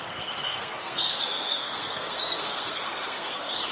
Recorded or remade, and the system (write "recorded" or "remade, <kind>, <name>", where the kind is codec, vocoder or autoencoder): remade, codec, SNAC